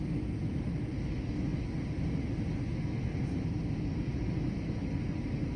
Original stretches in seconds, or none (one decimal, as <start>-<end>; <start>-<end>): 0.0-5.6